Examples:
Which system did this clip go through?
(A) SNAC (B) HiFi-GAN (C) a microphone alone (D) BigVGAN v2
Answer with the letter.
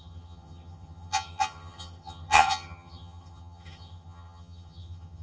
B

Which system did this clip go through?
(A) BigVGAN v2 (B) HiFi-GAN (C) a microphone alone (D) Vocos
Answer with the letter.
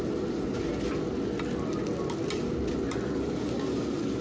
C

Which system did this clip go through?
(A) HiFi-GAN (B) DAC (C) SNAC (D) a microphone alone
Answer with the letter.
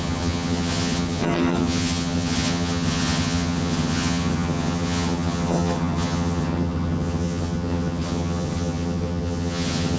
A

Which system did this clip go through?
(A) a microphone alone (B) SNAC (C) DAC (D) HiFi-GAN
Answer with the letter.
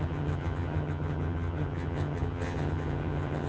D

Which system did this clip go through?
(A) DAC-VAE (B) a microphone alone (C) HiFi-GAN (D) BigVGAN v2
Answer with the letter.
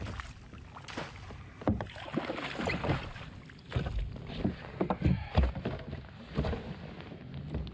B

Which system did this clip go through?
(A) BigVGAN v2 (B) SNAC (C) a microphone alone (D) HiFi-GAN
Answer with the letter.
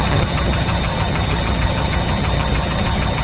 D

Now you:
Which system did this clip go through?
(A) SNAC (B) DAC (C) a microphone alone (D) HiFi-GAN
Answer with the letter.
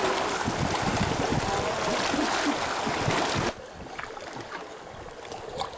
C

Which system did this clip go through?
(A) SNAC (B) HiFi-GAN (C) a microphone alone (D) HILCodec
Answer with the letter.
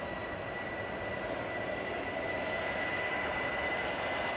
C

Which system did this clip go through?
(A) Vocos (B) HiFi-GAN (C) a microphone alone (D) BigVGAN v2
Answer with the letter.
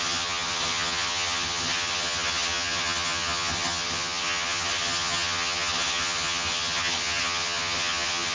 B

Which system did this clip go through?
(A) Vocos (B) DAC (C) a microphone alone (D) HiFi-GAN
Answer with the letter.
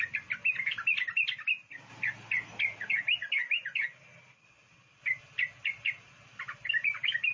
C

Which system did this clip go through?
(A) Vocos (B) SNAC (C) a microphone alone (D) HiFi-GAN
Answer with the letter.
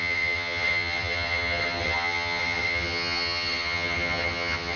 D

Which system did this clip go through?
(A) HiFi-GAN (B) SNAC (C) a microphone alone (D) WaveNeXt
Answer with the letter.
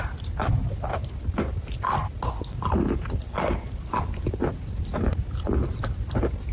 C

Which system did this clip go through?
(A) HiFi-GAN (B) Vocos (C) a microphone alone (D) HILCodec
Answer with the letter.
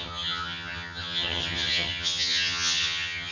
A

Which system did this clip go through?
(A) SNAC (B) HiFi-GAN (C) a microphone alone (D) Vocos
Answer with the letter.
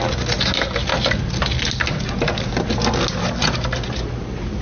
C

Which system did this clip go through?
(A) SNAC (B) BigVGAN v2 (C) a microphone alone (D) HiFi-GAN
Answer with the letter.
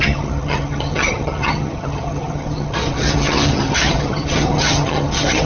D